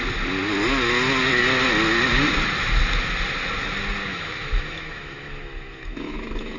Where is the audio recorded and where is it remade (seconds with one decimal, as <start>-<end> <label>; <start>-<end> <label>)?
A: 0.0-4.1 recorded; 4.1-6.6 remade